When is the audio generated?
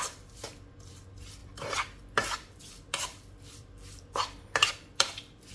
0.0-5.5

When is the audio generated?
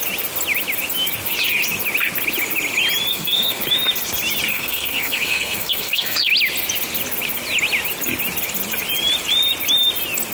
3.1-3.6; 4.5-6.3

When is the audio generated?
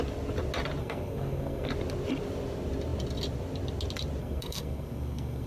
0.8-1.7; 4.2-5.5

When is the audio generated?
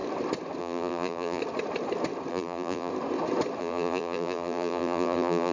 0.6-1.4; 2.3-2.9; 3.6-5.5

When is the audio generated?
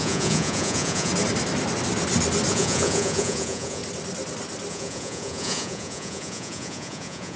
0.0-1.1; 2.5-3.8; 4.7-7.4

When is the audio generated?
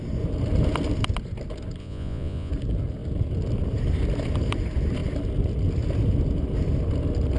1.8-2.5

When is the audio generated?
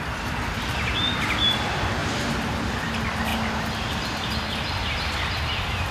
2.0-2.6; 3.3-4.3